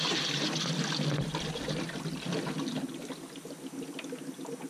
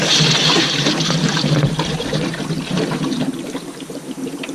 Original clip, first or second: first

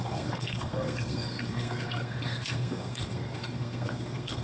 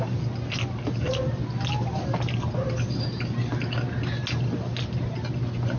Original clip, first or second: second